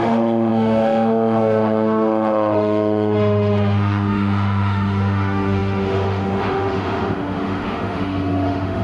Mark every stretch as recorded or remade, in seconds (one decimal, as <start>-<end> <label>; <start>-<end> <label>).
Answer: 0.0-8.8 remade